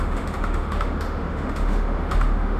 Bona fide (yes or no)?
no